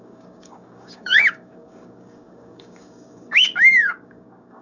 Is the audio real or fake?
fake